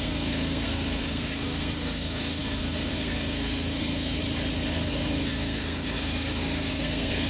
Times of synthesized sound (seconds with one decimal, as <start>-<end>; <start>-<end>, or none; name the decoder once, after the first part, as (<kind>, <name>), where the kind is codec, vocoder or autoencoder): 0.0-4.2 (codec, SNAC); 4.7-7.3